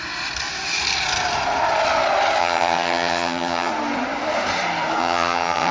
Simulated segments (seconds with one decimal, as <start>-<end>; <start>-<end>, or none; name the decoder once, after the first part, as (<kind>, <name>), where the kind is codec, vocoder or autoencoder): 2.4-3.7 (vocoder, HiFi-GAN); 5.0-5.7